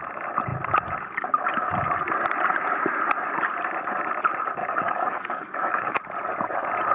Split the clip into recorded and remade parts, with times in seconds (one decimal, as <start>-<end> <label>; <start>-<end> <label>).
0.0-4.6 recorded; 4.6-6.0 remade; 6.0-6.9 recorded